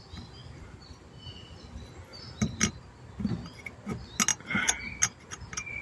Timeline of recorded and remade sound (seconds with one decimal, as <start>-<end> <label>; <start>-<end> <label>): 0.0-0.4 recorded; 0.4-1.0 remade; 1.0-2.1 recorded; 2.1-2.7 remade; 2.7-5.8 recorded